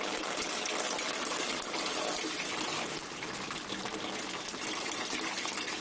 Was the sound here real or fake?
real